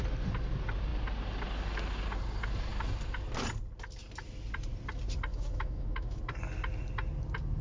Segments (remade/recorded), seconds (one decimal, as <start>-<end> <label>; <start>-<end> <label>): 0.0-5.3 recorded; 5.3-6.2 remade; 6.2-7.6 recorded